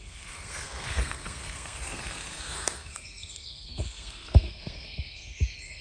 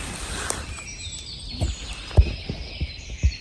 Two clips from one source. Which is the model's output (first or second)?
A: first